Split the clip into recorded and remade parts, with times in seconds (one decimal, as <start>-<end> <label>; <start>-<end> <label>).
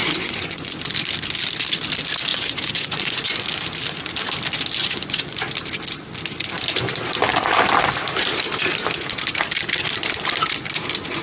0.0-0.8 remade; 0.8-2.3 recorded; 2.3-3.4 remade; 3.4-4.8 recorded; 4.8-5.5 remade; 5.5-11.2 recorded